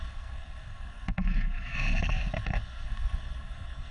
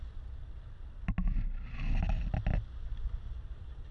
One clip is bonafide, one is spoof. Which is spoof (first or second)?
first